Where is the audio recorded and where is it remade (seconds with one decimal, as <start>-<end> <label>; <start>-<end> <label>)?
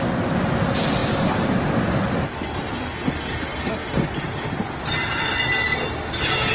0.0-6.5 recorded